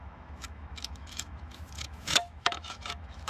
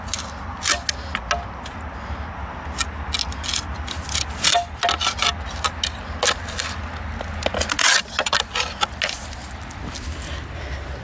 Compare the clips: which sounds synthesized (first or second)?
first